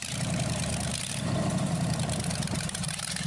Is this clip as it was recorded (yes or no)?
no